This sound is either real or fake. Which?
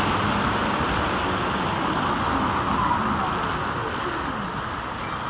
real